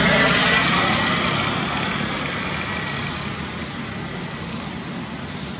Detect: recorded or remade recorded